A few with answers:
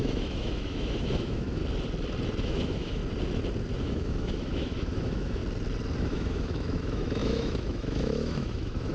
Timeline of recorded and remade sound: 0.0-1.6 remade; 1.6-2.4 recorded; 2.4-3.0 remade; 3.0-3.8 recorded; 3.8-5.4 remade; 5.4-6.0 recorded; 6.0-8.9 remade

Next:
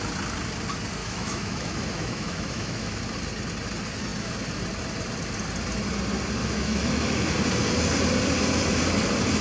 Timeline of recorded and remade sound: 0.0-1.0 recorded; 1.0-3.0 remade; 3.0-6.4 recorded; 6.4-7.3 remade; 7.3-9.4 recorded

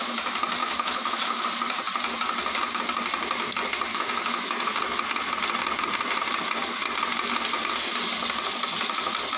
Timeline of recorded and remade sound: 0.0-0.6 recorded; 0.6-1.4 remade; 1.4-3.9 recorded; 3.9-4.7 remade; 4.7-9.4 recorded

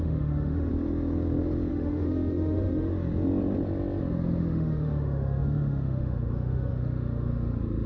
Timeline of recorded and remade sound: 0.0-0.7 remade; 0.7-1.7 recorded; 1.7-2.9 remade; 2.9-4.4 recorded; 4.4-7.9 remade